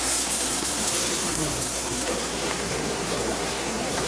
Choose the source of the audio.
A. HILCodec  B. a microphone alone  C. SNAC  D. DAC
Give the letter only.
C